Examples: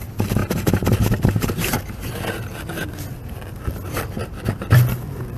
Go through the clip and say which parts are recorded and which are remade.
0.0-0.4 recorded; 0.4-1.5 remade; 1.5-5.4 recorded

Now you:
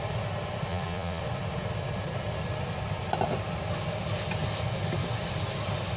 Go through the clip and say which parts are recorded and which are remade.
0.0-0.7 recorded; 0.7-1.2 remade; 1.2-6.0 recorded

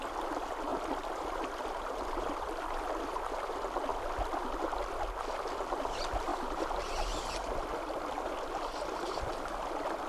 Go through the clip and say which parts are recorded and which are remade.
0.0-0.7 recorded; 0.7-3.3 remade; 3.3-6.3 recorded; 6.3-7.2 remade; 7.2-10.1 recorded

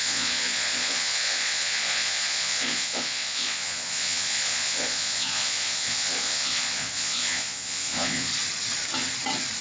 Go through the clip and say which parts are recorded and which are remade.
0.0-8.3 remade; 8.3-9.6 recorded

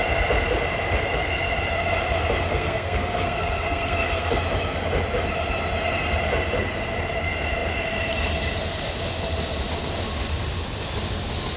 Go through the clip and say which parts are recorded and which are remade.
0.0-2.5 recorded; 2.5-4.4 remade; 4.4-11.6 recorded

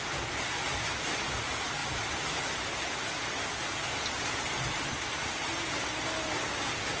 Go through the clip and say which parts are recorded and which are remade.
0.0-7.0 recorded